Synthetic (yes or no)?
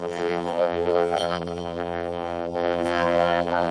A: yes